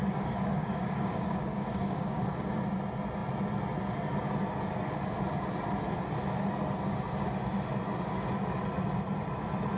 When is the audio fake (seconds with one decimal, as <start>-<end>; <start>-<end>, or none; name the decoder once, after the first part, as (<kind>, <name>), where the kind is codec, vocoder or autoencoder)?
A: 0.0-2.5 (codec, DAC)